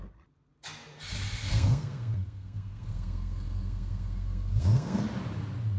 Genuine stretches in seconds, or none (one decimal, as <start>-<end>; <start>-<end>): 0.0-1.5; 5.0-5.8